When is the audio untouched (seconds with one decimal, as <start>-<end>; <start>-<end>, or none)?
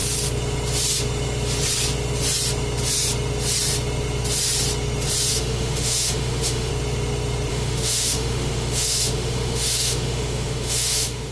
0.0-5.3; 6.7-7.5